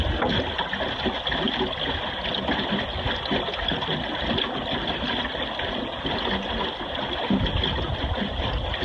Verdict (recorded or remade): recorded